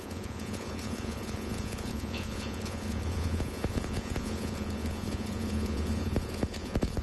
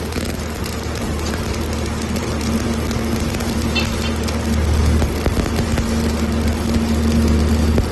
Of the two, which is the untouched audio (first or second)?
second